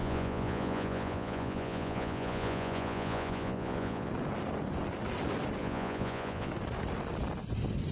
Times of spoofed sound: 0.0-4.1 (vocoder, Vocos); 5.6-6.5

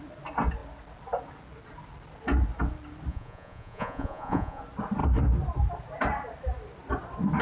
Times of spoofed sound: 3.1-4.6 (vocoder, Vocos)

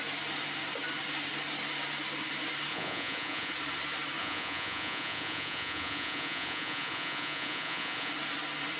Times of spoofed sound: 2.7-3.5 (vocoder, Vocos); 4.2-8.1